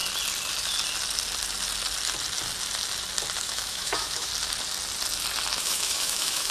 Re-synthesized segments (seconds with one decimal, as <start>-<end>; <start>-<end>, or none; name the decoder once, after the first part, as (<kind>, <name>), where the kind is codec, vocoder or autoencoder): 3.4-4.3 (autoencoder, DAC-VAE); 5.6-6.5